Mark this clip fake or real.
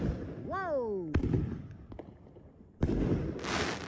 real